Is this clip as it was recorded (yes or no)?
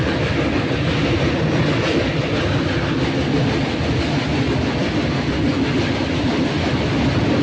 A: yes